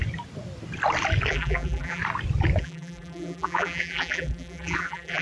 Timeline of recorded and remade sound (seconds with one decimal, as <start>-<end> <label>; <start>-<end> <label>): 0.0-1.3 recorded; 1.3-2.0 remade; 2.0-2.6 recorded; 2.6-5.2 remade